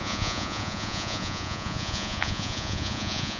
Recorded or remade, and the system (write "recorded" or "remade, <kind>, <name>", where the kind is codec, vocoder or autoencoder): remade, vocoder, Vocos